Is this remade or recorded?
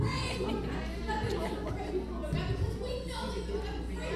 recorded